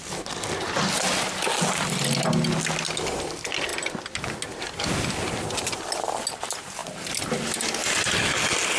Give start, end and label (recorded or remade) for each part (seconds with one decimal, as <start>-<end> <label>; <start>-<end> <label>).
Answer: 0.0-8.8 recorded